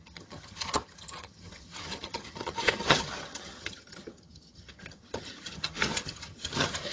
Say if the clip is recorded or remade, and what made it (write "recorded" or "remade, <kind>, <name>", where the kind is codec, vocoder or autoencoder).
remade, vocoder, HiFi-GAN